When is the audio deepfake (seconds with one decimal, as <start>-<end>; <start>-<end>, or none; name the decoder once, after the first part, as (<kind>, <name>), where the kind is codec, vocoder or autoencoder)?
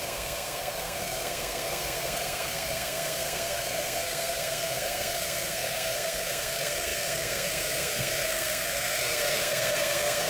0.0-10.3 (codec, SNAC)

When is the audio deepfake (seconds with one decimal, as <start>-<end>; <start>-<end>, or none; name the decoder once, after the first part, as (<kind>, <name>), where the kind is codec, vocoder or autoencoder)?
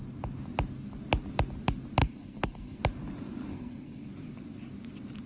2.0-2.8 (codec, SNAC); 3.5-4.1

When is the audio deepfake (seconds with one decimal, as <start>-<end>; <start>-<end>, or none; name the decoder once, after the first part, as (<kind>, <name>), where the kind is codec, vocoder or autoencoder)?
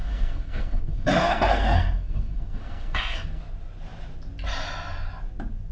0.0-3.4 (codec, SNAC)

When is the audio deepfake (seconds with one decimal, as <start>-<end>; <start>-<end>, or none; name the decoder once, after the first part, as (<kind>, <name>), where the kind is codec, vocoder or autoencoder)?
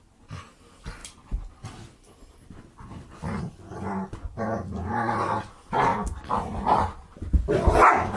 none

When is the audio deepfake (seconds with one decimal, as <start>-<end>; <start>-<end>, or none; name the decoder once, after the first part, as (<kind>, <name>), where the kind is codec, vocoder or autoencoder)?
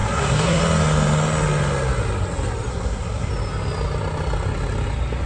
0.0-0.6 (codec, SNAC); 2.7-3.3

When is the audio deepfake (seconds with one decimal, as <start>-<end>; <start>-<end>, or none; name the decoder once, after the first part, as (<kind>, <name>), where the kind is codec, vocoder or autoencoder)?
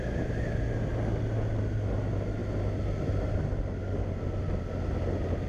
none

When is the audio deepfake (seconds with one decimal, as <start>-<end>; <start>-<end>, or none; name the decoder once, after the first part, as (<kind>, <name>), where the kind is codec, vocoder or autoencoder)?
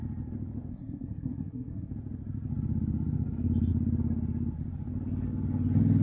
0.7-1.9 (codec, SNAC)